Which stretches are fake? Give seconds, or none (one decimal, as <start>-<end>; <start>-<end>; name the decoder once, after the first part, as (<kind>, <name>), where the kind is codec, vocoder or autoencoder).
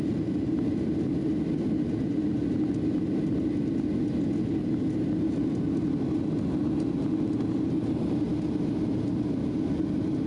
none